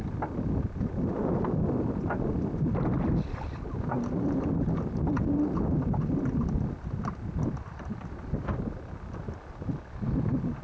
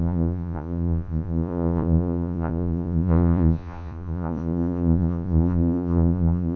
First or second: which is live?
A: first